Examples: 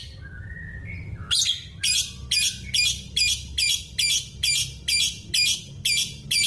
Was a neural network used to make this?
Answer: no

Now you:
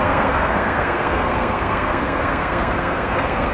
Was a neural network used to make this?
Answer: yes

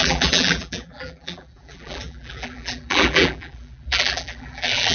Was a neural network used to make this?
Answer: yes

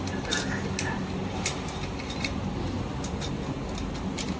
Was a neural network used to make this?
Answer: no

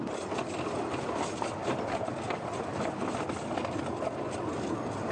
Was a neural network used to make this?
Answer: no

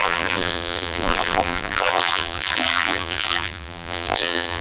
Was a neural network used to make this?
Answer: yes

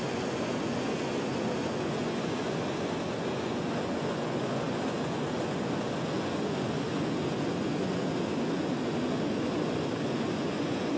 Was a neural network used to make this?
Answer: yes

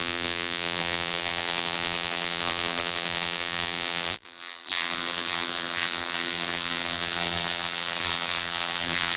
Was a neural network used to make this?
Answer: yes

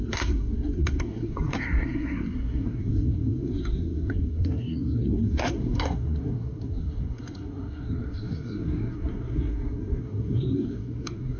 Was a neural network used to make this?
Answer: yes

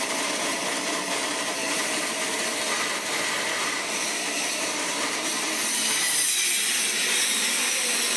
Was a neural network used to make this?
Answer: yes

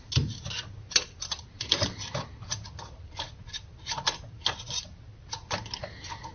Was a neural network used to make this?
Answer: no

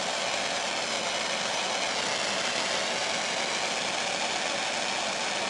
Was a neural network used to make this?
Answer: no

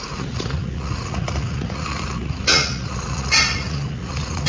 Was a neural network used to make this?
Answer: yes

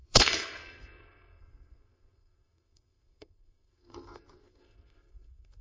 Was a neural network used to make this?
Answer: yes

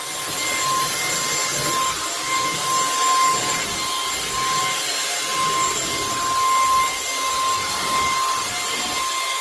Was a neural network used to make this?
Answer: no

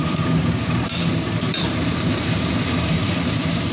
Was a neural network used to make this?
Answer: yes